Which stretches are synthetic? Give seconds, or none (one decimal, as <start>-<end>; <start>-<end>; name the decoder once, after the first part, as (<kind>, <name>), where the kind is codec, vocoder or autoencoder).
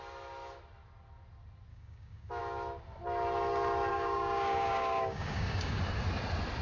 1.7-2.4 (codec, DAC); 3.9-5.8